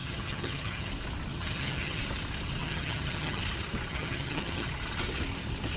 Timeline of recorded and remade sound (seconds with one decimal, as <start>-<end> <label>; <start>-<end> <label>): 0.0-0.9 remade; 0.9-1.3 recorded; 1.3-2.0 remade; 2.0-2.6 recorded; 2.6-3.4 remade; 3.4-3.9 recorded; 3.9-4.7 remade; 4.7-5.8 recorded